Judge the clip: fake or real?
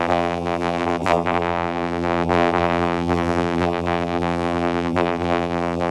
fake